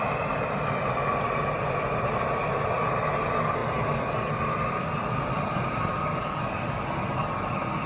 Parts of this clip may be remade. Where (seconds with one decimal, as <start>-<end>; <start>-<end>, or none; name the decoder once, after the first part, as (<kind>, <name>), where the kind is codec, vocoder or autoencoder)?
none